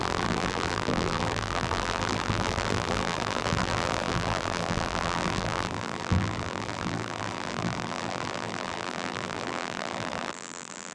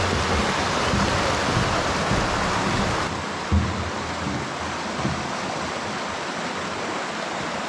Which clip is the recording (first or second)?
second